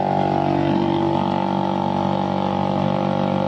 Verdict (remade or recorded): recorded